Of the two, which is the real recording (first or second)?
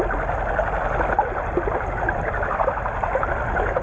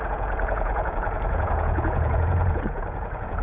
first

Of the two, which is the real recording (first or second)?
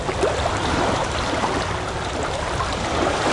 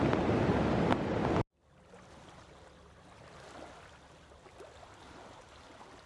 second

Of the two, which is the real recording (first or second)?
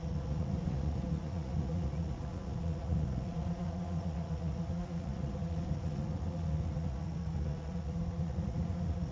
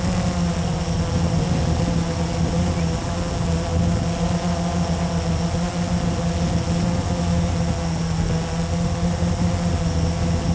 second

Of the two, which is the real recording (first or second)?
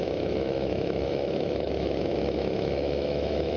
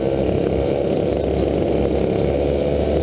second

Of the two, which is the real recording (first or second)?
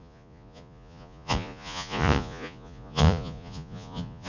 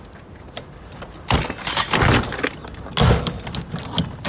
second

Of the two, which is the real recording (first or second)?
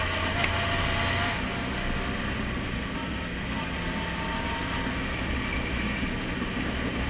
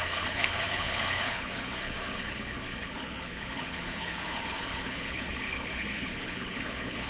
first